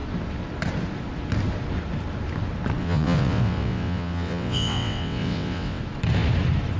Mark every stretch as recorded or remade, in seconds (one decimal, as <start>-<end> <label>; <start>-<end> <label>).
0.0-2.8 recorded; 2.8-5.8 remade; 5.8-6.8 recorded